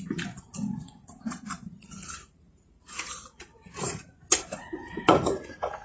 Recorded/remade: remade